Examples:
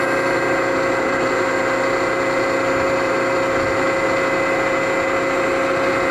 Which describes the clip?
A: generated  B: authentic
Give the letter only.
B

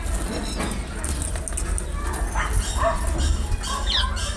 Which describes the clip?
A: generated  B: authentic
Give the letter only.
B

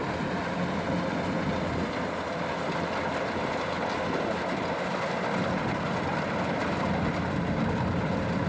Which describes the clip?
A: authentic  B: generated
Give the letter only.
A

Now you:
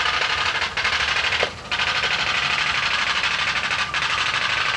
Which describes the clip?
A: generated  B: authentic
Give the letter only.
A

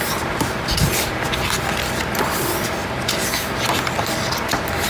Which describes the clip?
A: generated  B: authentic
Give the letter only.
B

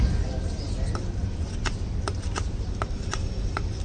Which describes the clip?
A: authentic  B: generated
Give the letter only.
A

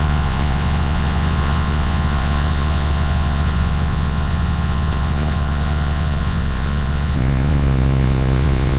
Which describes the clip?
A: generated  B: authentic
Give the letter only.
A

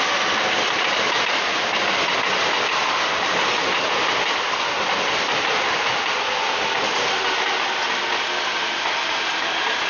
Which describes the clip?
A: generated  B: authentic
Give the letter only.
B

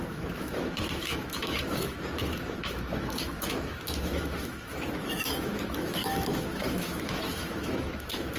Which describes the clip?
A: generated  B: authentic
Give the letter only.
A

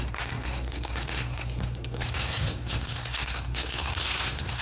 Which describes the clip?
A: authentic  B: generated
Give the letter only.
B